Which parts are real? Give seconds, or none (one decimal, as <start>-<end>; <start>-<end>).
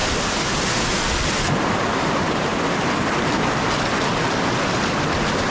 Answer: 0.0-1.2; 2.5-4.8